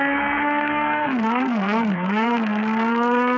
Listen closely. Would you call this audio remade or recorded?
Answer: remade